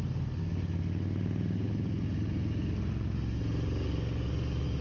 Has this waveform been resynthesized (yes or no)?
no